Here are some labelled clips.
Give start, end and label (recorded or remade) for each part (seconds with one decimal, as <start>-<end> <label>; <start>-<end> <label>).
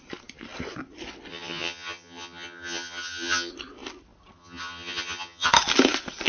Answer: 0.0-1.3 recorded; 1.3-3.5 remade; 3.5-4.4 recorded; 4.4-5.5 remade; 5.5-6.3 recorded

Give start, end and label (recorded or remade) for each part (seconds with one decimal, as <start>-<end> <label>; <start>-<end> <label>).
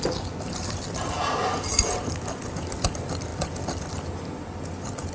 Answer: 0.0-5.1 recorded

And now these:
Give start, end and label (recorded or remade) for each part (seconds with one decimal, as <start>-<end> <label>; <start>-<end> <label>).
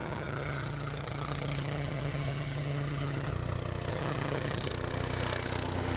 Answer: 0.0-3.3 remade; 3.3-3.9 recorded; 3.9-4.7 remade; 4.7-6.0 recorded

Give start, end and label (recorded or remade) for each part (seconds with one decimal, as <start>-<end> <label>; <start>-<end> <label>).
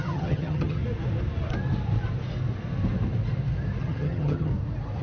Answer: 0.0-0.8 remade; 0.8-3.8 recorded; 3.8-4.5 remade; 4.5-5.0 recorded